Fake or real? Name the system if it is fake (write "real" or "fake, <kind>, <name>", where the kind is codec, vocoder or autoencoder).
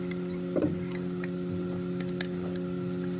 real